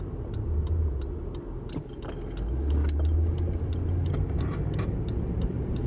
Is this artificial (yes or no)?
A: no